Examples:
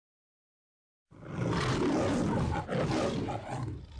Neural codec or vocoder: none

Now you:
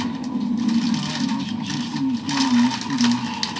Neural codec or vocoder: none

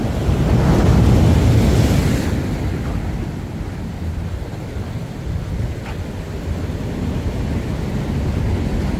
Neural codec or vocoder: none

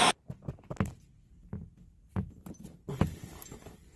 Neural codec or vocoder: none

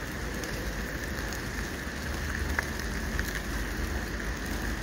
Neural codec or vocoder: none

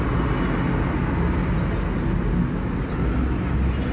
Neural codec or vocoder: none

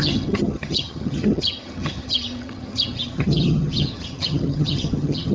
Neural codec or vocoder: vocoder, HiFi-GAN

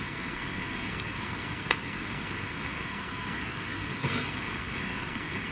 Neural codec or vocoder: codec, SNAC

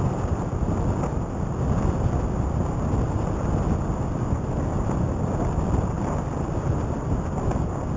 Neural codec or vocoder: none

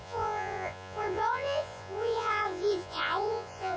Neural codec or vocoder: vocoder, Vocos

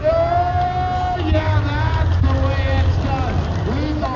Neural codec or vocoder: none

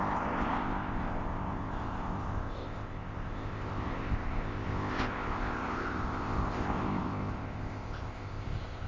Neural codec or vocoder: codec, ZipCodec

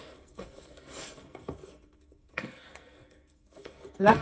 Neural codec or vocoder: codec, SNAC